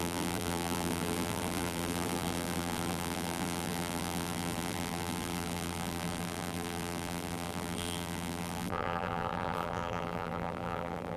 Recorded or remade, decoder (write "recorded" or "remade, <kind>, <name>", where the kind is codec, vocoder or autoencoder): remade, vocoder, BigVGAN v2